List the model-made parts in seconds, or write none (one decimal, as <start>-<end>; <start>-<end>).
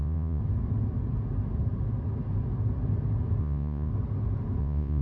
0.0-0.4; 3.4-3.9; 4.6-5.0